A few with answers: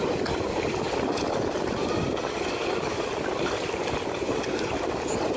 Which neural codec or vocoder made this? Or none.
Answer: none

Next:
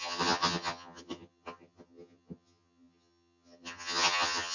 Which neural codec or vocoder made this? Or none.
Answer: vocoder, HiFi-GAN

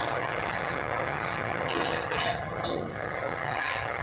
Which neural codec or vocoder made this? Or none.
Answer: vocoder, HiFi-GAN